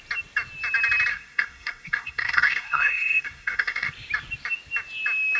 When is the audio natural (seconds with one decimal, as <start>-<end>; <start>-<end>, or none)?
0.0-1.1; 3.9-5.4